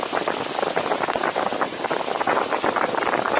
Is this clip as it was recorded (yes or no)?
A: yes